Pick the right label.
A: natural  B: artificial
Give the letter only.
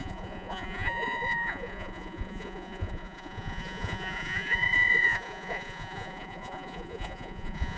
B